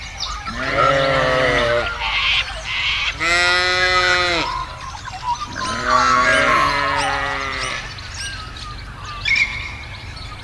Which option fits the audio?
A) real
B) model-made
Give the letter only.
A